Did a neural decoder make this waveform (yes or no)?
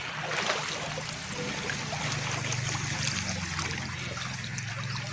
no